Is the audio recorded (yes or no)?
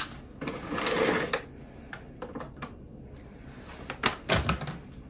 yes